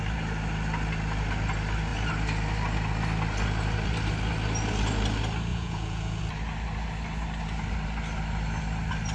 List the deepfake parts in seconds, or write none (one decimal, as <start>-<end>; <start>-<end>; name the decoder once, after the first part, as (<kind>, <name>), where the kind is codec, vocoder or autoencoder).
5.5-6.2 (vocoder, Vocos)